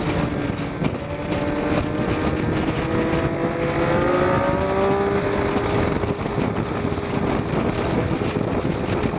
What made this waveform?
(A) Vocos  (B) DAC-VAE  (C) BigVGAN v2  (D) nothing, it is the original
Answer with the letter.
D